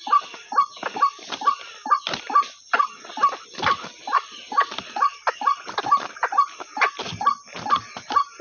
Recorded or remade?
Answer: recorded